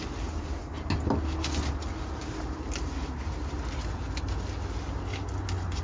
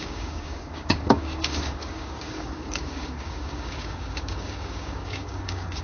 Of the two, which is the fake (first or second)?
second